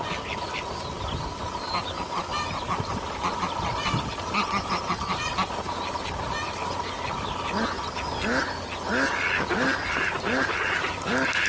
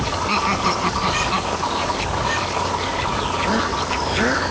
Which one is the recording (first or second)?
first